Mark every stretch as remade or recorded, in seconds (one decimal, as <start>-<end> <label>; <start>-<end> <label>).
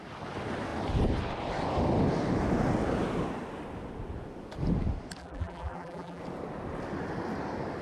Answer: 0.0-5.2 recorded; 5.2-6.2 remade; 6.2-7.8 recorded